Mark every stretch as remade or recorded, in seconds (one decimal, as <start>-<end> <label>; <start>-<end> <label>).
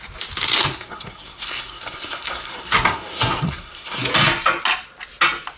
0.0-0.6 recorded; 0.6-4.0 remade; 4.0-5.6 recorded